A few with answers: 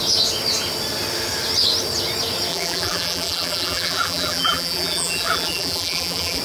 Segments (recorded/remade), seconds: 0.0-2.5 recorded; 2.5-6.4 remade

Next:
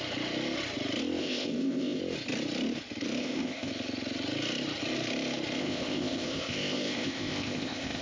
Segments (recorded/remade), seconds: 0.0-1.2 recorded; 1.2-2.0 remade; 2.0-3.2 recorded; 3.2-3.7 remade; 3.7-5.6 recorded; 5.6-8.0 remade

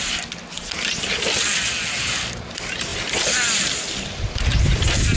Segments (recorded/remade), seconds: 0.0-5.2 recorded

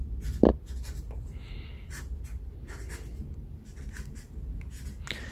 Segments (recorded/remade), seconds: 0.0-5.3 recorded

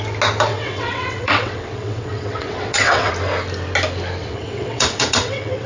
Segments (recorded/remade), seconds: 0.0-0.5 recorded; 0.5-3.1 remade; 3.1-4.2 recorded; 4.2-5.7 remade

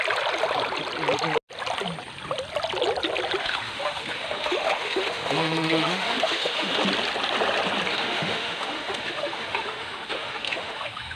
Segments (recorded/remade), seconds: 0.0-3.4 recorded; 3.4-6.8 remade; 6.8-7.9 recorded; 7.9-11.2 remade